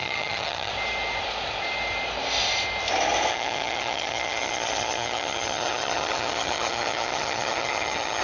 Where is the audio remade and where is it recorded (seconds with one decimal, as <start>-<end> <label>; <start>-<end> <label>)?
0.0-0.7 remade; 0.7-3.3 recorded; 3.3-8.2 remade